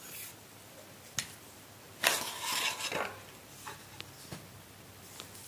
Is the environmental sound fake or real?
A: real